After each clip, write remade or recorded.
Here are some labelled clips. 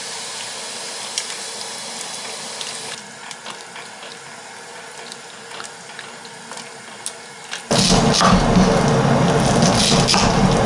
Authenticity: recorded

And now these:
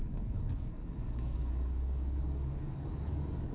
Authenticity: remade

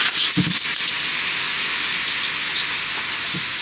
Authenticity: recorded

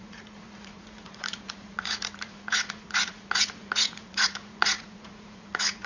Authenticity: remade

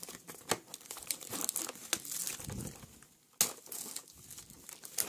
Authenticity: recorded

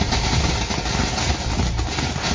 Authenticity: recorded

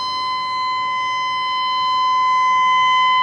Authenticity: recorded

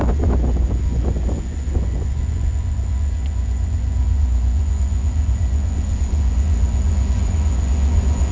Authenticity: remade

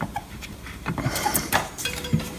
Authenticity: remade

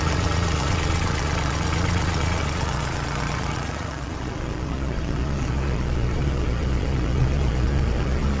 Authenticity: remade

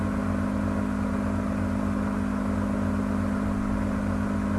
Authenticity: recorded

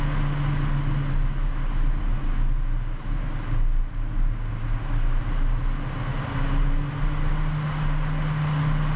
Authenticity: recorded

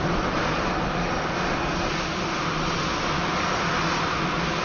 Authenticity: recorded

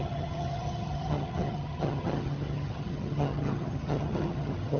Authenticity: remade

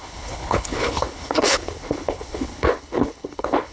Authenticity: remade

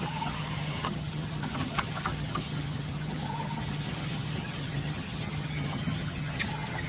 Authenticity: remade